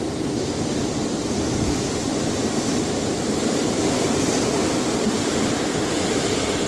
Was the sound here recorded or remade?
recorded